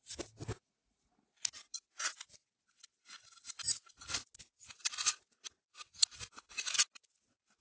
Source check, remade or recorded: recorded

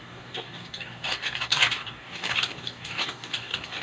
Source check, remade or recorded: remade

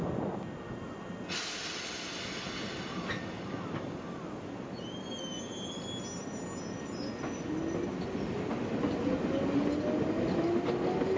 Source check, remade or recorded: recorded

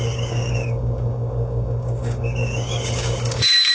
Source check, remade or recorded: remade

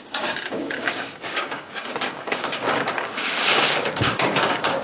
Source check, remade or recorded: remade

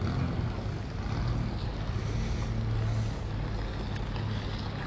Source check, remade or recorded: recorded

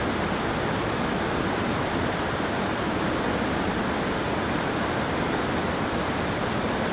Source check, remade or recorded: recorded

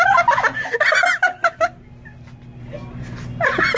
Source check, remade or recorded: recorded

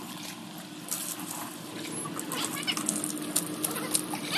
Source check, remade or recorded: recorded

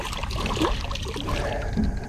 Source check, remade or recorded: recorded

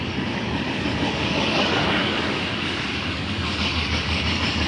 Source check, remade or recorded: remade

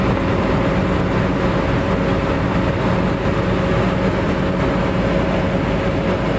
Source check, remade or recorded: recorded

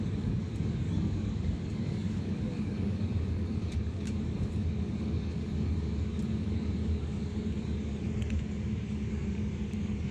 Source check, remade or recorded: remade